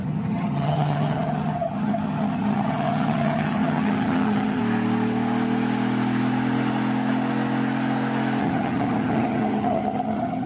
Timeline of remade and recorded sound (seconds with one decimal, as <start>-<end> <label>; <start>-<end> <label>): 0.0-4.6 remade; 4.6-8.4 recorded; 8.4-10.5 remade